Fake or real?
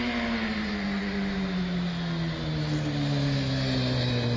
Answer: real